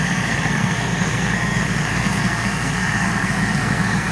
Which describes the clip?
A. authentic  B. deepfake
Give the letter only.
B